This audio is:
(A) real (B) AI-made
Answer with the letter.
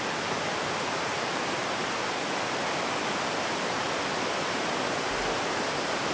A